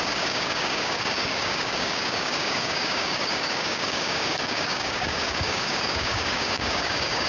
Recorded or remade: remade